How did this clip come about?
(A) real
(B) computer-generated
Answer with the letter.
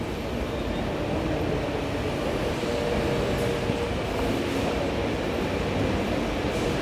A